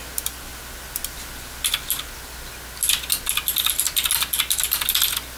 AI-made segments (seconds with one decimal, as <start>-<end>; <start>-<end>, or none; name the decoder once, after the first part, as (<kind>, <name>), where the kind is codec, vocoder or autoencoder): none